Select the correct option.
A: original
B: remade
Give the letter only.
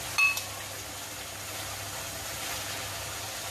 A